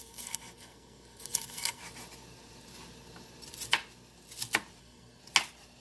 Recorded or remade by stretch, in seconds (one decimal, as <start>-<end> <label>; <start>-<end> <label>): 0.0-1.8 remade; 1.8-4.8 recorded; 4.8-5.2 remade; 5.2-5.8 recorded